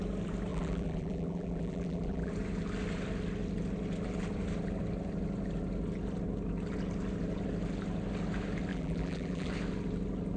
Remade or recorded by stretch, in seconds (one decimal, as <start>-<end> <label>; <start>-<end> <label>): 0.0-0.5 recorded; 0.5-2.3 remade; 2.3-8.7 recorded; 8.7-9.5 remade; 9.5-10.4 recorded